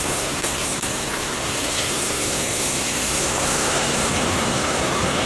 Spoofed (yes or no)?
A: yes